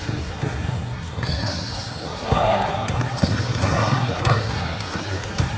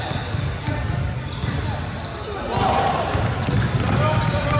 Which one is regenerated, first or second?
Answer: first